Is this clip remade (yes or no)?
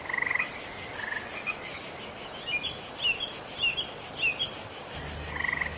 no